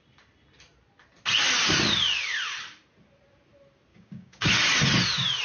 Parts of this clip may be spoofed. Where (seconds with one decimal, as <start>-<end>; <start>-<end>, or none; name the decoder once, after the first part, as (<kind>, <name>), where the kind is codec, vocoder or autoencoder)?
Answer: 3.9-4.5 (codec, DAC)